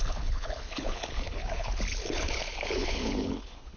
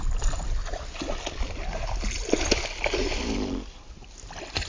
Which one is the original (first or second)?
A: second